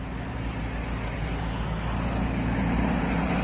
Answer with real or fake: real